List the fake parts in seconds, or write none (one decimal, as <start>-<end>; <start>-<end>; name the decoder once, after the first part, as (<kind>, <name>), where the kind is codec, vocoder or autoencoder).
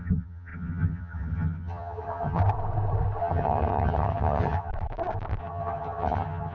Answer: 0.0-2.4 (vocoder, HiFi-GAN); 3.2-4.7; 5.4-6.5